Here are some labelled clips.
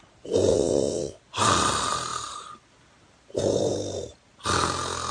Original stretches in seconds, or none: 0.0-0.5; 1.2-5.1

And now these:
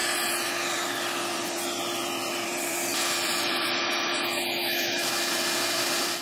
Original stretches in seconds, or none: 0.0-4.6; 5.2-6.2

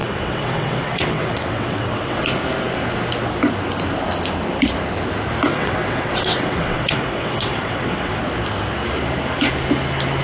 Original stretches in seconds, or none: 2.2-5.5; 8.2-10.2

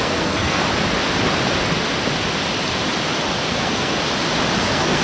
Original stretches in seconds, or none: 0.6-3.5; 4.0-4.6

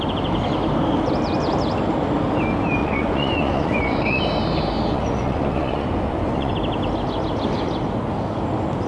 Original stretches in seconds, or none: 0.0-2.8; 4.2-4.9; 6.5-8.9

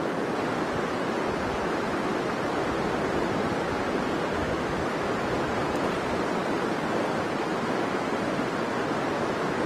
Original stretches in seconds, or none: 0.0-4.4; 5.1-9.7

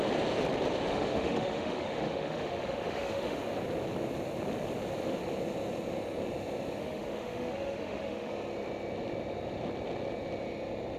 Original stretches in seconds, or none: 0.0-0.9; 3.4-6.8; 8.3-11.0

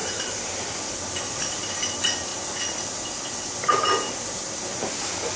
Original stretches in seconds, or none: 0.6-5.4